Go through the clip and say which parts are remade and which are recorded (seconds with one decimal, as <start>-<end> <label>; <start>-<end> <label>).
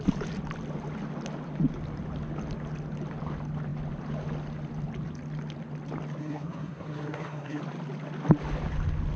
0.0-6.2 recorded; 6.2-7.6 remade; 7.6-9.2 recorded